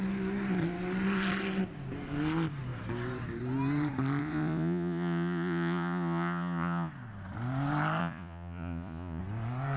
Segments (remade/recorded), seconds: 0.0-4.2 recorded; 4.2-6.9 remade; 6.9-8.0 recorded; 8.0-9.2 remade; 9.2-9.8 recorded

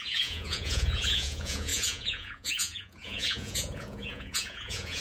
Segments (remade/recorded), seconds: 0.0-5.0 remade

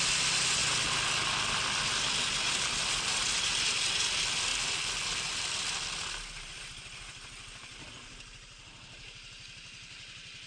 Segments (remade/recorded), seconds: 0.0-10.5 recorded